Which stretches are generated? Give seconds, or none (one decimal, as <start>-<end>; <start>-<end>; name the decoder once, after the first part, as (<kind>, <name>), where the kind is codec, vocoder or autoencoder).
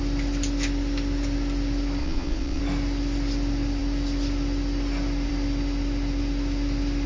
2.0-2.6 (vocoder, Vocos)